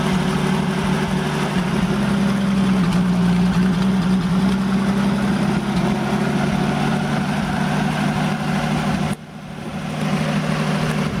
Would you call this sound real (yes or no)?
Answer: yes